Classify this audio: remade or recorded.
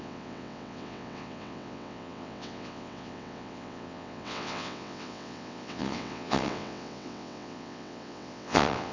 remade